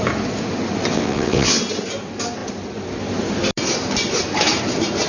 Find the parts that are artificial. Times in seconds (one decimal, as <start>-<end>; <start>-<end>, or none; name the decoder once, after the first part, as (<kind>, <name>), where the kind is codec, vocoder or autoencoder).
0.9-1.6 (vocoder, WaveNeXt)